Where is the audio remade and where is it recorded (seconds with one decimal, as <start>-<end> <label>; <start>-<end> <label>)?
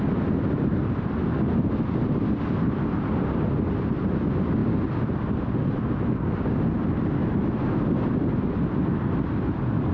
0.0-0.8 recorded; 0.8-1.6 remade; 1.6-9.9 recorded